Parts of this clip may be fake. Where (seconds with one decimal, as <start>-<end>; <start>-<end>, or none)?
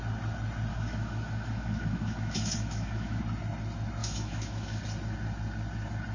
0.7-3.2; 4.0-4.8